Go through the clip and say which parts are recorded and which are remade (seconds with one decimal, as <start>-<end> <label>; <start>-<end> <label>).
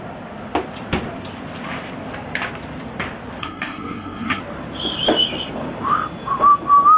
0.0-3.4 recorded; 3.4-4.4 remade; 4.4-7.0 recorded